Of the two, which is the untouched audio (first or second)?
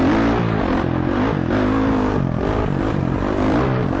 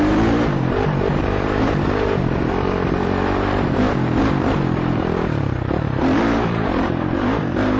first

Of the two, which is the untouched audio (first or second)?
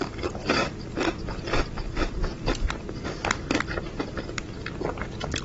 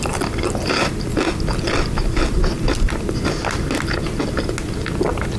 second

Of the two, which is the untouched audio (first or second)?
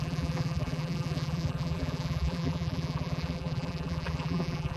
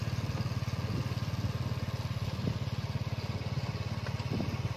second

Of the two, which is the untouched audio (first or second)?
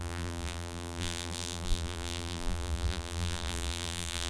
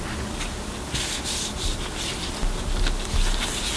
second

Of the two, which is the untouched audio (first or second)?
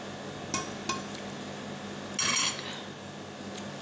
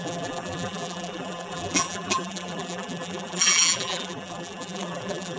first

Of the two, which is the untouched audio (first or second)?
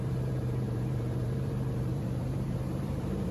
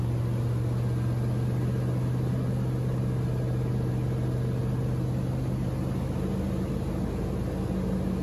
second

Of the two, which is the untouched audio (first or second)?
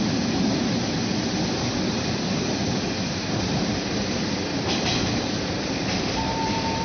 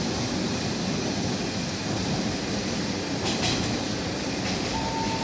second